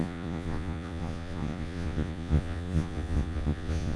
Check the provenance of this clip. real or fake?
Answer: fake